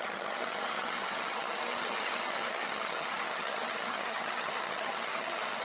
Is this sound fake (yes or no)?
yes